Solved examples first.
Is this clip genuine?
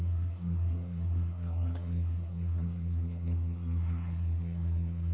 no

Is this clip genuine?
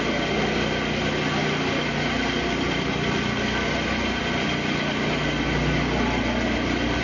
yes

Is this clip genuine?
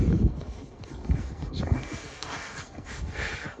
no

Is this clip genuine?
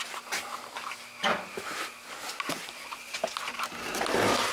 yes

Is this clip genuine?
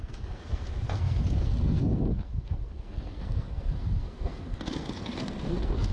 no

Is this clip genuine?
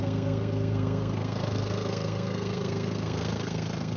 no